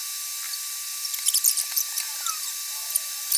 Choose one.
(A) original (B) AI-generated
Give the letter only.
A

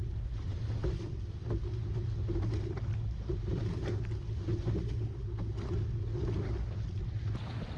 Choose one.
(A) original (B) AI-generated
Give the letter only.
A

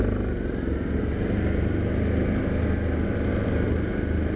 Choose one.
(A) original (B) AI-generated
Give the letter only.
A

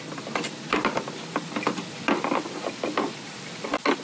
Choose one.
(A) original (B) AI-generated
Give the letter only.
A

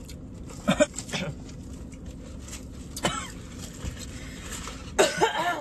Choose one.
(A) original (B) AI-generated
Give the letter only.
A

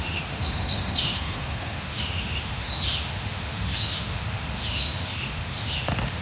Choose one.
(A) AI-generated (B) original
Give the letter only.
A